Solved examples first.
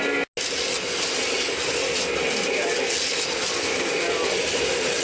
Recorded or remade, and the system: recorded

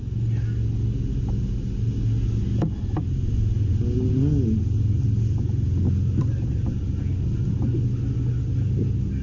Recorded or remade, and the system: recorded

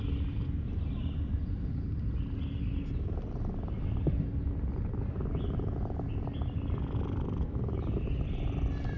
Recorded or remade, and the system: recorded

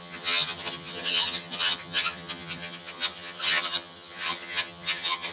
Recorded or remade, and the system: remade, vocoder, HiFi-GAN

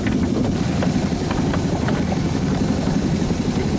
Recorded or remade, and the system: recorded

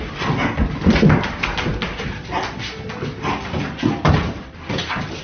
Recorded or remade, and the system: recorded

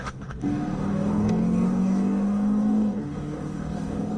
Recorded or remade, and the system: remade, codec, DAC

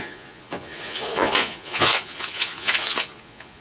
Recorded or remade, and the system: remade, vocoder, Vocos